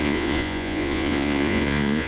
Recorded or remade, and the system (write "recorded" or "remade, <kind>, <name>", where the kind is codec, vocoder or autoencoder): remade, vocoder, Vocos